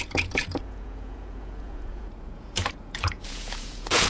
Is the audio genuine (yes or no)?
no